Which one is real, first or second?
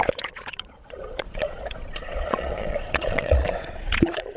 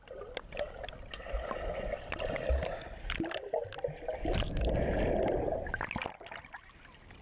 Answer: second